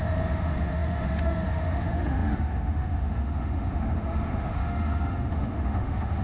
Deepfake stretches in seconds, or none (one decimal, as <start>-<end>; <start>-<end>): 0.0-6.2